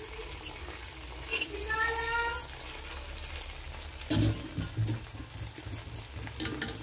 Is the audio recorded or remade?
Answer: recorded